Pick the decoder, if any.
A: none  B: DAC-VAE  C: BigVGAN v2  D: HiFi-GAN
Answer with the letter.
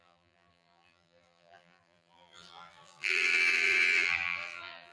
C